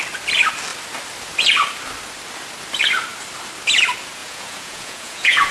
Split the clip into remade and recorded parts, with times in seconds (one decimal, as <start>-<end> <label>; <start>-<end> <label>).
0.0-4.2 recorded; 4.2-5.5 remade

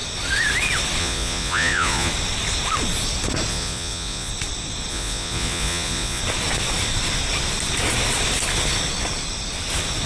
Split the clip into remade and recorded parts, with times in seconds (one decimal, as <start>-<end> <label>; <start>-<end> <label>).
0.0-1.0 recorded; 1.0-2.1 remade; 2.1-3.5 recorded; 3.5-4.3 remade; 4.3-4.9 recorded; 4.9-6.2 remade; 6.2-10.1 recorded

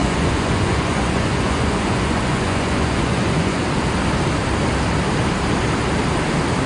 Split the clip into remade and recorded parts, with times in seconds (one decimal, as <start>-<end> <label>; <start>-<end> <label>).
0.0-3.6 remade; 3.6-6.7 recorded